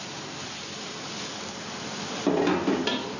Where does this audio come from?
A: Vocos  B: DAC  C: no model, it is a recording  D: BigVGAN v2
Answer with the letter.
C